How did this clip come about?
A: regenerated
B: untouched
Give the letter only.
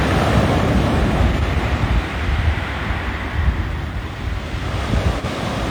A